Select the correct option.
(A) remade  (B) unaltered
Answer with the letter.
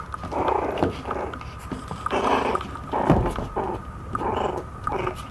B